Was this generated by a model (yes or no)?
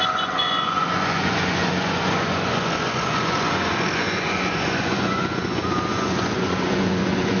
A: yes